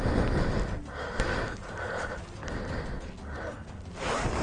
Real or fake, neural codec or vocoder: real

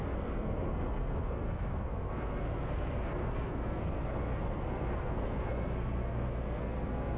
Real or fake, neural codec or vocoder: fake, codec, SNAC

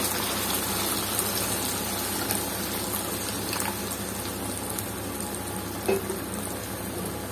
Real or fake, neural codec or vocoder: real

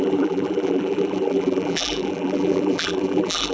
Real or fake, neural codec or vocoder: fake, vocoder, BigVGAN v2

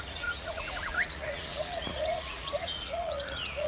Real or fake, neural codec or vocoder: fake, vocoder, Vocos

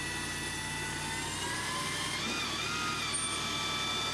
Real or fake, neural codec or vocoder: real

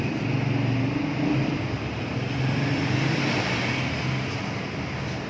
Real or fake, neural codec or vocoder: real